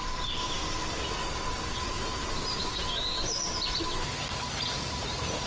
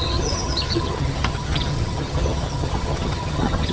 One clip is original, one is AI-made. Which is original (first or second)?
first